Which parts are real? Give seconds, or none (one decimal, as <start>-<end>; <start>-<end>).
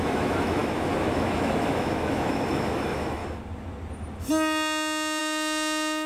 3.2-5.2